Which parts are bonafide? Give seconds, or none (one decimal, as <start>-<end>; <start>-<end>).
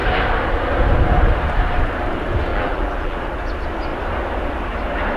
0.0-2.5; 3.2-5.2